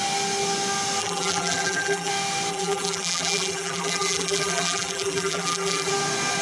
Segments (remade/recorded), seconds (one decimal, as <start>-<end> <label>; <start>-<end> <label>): 0.0-1.0 recorded; 1.0-2.1 remade; 2.1-2.5 recorded; 2.5-5.9 remade; 5.9-6.4 recorded